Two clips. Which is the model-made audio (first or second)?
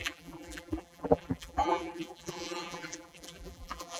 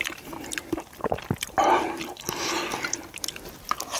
first